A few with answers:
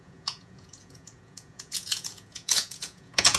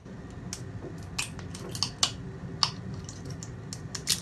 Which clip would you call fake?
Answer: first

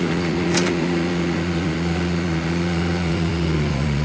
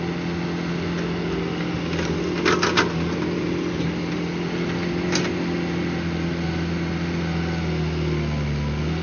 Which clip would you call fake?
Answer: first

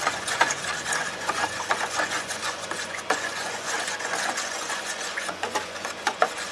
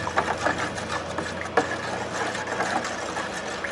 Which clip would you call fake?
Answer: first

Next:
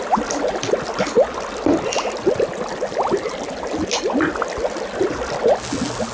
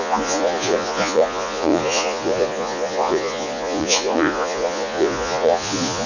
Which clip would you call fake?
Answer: second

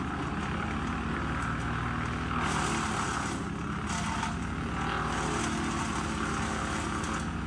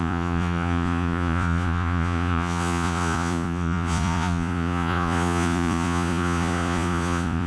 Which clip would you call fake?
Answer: second